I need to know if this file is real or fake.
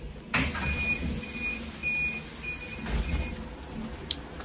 real